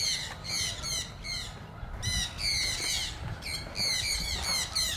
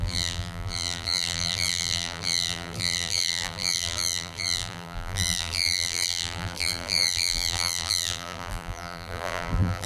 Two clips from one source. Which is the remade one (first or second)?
second